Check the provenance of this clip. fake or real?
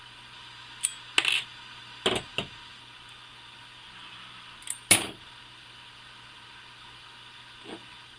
real